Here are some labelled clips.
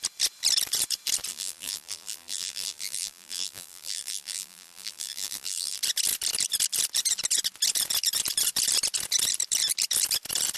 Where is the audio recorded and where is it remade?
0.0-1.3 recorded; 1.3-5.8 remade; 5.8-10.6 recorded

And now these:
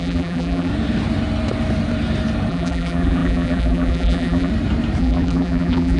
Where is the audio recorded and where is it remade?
0.0-0.7 remade; 0.7-2.5 recorded; 2.5-4.5 remade; 4.5-5.0 recorded; 5.0-6.0 remade

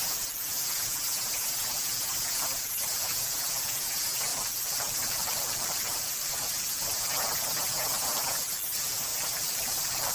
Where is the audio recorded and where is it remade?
0.0-4.3 recorded; 4.3-6.3 remade; 6.3-9.1 recorded; 9.1-10.1 remade